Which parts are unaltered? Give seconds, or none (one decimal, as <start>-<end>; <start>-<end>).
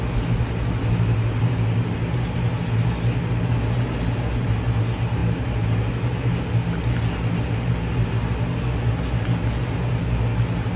0.0-10.8